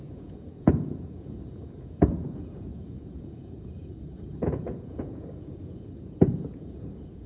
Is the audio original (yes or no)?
no